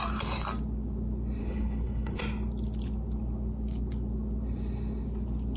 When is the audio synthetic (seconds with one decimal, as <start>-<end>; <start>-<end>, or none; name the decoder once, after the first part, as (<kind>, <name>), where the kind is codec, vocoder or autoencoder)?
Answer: 1.4-2.2 (codec, HILCodec)